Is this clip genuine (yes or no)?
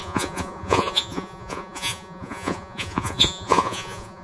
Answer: no